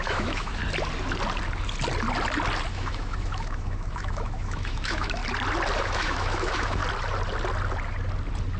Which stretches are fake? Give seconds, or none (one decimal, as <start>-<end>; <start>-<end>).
0.0-0.6; 2.7-5.2; 5.8-6.8